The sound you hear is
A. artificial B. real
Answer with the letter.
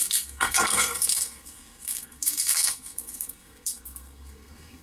A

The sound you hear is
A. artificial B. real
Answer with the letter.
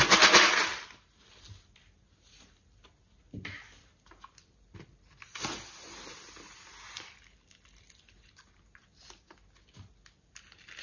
B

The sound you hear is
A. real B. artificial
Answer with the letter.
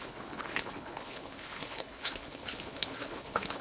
B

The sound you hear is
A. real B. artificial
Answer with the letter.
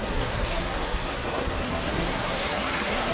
B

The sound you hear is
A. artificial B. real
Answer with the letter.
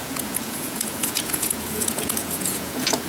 A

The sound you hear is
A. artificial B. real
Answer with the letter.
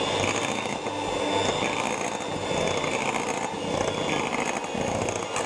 B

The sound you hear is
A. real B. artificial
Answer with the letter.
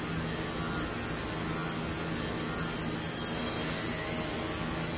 A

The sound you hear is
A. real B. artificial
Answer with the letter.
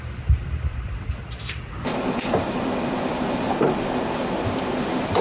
B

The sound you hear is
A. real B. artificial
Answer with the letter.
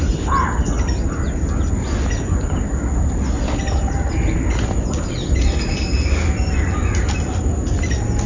A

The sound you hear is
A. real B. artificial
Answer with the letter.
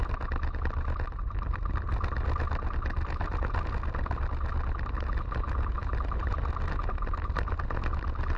A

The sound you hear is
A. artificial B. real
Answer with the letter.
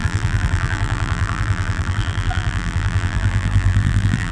A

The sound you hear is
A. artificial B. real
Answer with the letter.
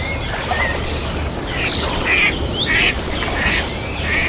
B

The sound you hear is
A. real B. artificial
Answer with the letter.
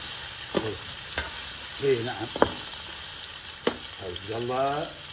A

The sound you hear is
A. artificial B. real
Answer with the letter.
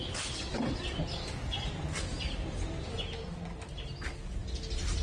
B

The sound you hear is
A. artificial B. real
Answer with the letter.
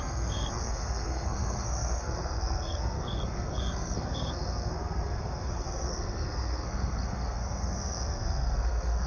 A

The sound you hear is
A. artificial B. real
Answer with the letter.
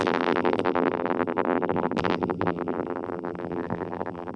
A